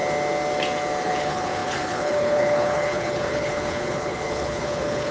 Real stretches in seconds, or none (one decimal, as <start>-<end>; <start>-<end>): 0.0-1.0

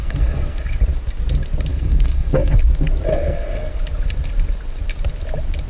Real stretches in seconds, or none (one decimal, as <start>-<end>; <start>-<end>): 0.6-1.7; 2.6-3.1; 3.8-5.7

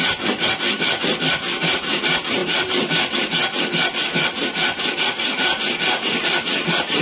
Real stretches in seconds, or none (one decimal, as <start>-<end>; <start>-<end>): 0.0-7.0

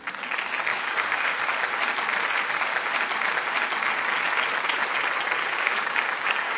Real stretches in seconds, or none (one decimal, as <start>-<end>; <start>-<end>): 0.0-0.7; 1.4-5.4